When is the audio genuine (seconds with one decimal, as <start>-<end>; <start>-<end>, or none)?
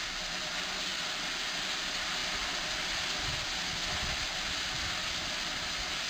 0.0-6.1